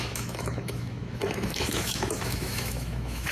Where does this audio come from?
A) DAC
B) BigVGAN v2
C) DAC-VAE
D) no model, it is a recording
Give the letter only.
C